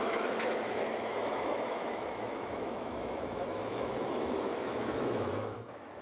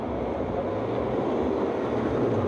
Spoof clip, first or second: first